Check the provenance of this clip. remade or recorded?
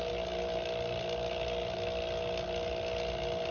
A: recorded